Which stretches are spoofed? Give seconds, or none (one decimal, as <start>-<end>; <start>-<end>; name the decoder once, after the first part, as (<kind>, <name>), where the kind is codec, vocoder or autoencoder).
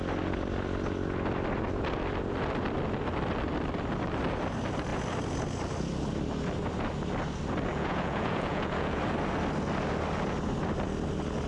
7.7-9.0 (vocoder, Vocos)